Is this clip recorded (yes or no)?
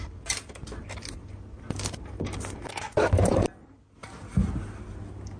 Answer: yes